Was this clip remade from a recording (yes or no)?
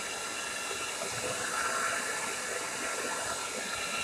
no